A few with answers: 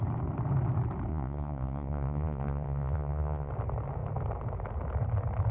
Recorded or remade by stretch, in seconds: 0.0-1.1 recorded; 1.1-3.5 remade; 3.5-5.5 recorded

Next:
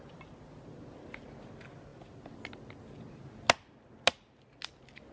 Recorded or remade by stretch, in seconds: 0.0-5.1 recorded

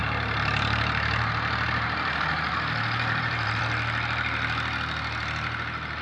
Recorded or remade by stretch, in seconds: 0.0-3.6 remade; 3.6-6.0 recorded